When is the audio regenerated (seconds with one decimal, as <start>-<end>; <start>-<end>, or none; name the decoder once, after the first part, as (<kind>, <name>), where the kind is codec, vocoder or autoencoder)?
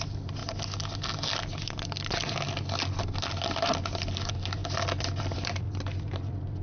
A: 0.0-0.4 (vocoder, BigVGAN v2); 3.6-4.6; 5.2-6.6